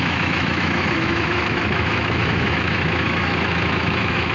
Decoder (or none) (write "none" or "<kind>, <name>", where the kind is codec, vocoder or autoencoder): autoencoder, DAC-VAE